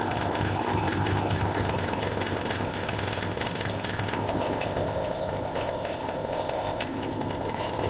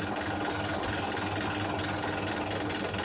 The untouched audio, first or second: second